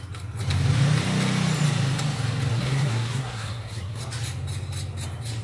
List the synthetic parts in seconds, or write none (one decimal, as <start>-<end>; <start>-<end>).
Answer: 2.5-4.0